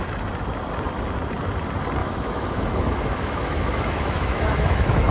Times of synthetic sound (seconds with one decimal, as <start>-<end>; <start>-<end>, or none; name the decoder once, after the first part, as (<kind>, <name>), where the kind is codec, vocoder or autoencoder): 2.0-5.1 (autoencoder, DAC-VAE)